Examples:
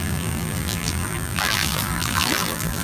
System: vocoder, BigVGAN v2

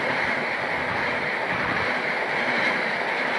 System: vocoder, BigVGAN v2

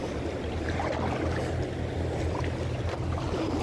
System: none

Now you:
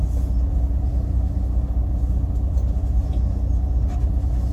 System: none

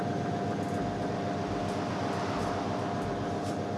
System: none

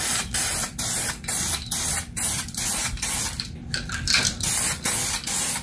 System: vocoder, BigVGAN v2